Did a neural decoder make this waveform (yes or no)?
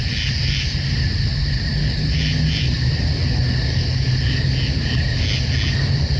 no